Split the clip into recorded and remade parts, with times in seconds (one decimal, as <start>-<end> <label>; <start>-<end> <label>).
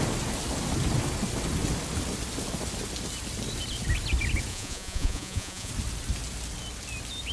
0.0-4.5 recorded; 4.5-5.7 remade; 5.7-7.3 recorded